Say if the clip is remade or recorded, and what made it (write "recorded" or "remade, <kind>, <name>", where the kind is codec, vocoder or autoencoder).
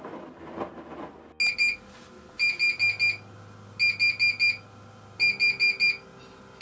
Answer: recorded